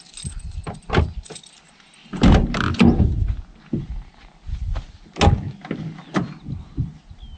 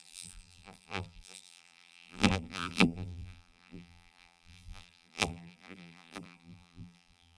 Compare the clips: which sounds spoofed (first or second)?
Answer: second